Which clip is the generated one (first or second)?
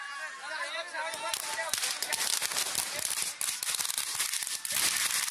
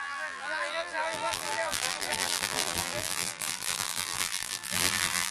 second